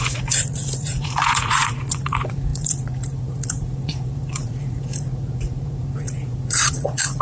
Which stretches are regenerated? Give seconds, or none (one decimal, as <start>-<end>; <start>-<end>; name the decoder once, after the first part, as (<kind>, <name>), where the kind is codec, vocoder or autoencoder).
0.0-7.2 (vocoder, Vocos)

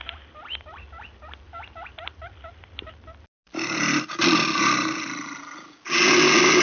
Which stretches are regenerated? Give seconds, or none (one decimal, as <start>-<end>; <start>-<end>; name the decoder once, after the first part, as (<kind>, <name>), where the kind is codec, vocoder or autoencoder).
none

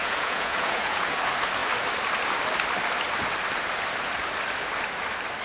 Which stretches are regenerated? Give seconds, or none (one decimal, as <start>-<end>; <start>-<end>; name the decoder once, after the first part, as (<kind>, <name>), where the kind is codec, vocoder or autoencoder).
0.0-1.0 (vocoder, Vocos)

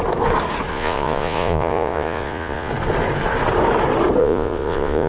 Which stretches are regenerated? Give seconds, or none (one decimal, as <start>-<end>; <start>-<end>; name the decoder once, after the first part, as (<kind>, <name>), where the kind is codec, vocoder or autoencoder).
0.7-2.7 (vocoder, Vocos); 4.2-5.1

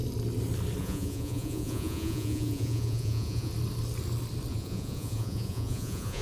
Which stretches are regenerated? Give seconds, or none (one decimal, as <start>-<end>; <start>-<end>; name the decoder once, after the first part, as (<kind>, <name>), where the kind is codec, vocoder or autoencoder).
0.8-3.5 (vocoder, Vocos); 4.5-6.2